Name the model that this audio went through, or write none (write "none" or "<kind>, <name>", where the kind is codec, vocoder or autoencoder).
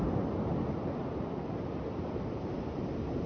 vocoder, BigVGAN v2